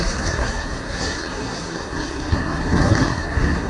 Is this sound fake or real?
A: fake